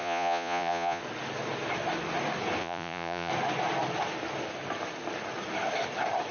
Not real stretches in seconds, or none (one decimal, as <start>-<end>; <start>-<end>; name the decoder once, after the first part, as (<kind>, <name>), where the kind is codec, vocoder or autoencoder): 0.0-1.0 (vocoder, Vocos); 2.6-3.3